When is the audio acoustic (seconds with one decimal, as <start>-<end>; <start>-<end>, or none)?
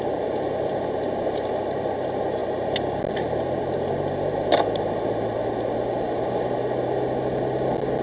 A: 0.0-8.0